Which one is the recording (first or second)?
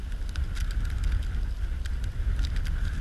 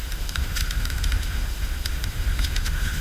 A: first